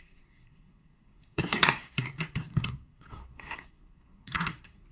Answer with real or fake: fake